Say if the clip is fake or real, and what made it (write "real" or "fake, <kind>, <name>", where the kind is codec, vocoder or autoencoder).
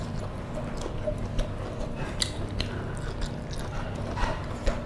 real